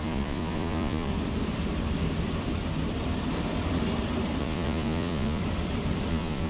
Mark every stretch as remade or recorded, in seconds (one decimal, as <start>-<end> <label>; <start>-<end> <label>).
0.0-1.1 remade; 1.1-4.4 recorded; 4.4-5.4 remade; 5.4-6.1 recorded; 6.1-6.5 remade